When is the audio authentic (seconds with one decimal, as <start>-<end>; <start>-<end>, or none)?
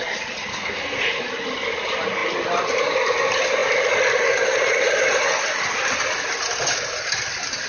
0.0-0.5; 1.1-7.7